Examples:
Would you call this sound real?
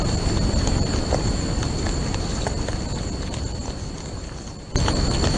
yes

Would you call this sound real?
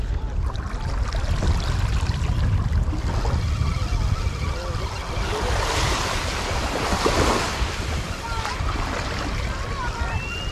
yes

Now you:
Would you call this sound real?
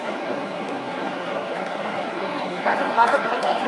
no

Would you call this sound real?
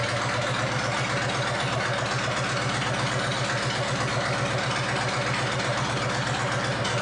yes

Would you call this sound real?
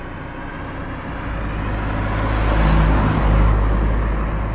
yes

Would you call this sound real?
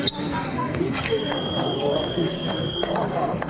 no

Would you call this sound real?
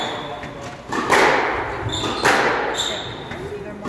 yes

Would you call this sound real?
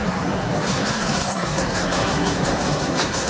no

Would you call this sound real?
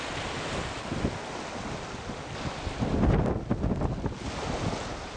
yes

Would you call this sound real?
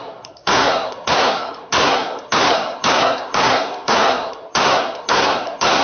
no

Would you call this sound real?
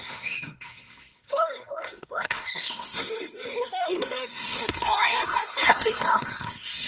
no